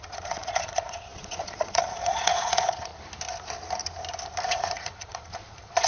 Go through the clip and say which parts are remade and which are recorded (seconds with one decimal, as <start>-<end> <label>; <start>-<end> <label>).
0.0-2.9 remade; 2.9-4.5 recorded; 4.5-5.9 remade